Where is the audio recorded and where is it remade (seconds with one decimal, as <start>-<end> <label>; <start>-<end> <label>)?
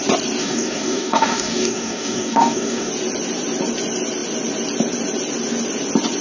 0.0-0.4 recorded; 0.4-2.9 remade; 2.9-6.2 recorded